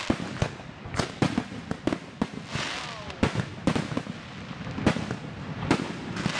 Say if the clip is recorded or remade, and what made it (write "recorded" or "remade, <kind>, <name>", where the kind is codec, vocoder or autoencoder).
recorded